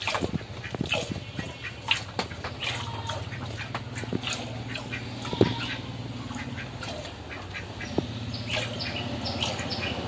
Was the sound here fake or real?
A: real